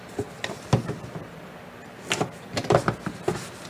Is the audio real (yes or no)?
yes